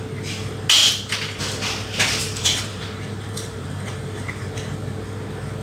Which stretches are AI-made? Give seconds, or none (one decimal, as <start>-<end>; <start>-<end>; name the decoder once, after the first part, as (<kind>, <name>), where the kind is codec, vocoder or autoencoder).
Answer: 0.8-1.4 (vocoder, BigVGAN v2); 2.2-4.5